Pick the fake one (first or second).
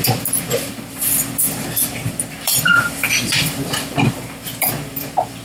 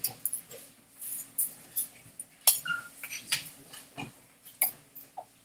first